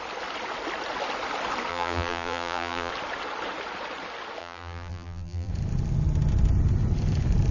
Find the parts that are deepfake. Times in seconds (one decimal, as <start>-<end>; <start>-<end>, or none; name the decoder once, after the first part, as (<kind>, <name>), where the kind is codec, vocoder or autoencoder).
1.7-2.9 (vocoder, BigVGAN v2); 4.4-5.5